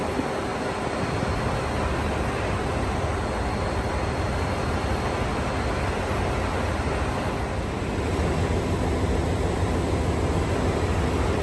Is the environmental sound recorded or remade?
recorded